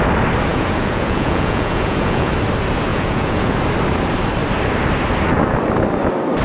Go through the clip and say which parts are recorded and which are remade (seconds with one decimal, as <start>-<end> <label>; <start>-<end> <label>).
0.0-0.5 recorded; 0.5-2.3 remade; 2.3-2.9 recorded; 2.9-3.6 remade; 3.6-6.4 recorded